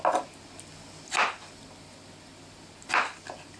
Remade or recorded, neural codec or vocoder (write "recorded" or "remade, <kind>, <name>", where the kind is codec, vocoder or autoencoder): recorded